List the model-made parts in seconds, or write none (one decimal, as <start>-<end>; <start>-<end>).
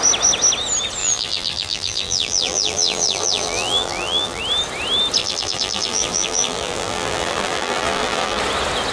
1.0-4.4; 5.2-8.4